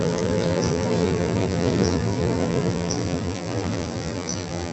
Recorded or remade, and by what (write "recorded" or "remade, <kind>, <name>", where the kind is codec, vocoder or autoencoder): remade, vocoder, BigVGAN v2